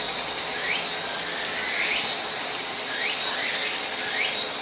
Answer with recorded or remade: recorded